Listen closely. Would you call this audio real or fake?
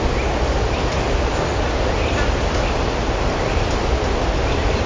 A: real